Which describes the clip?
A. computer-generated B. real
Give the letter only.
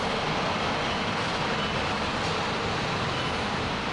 B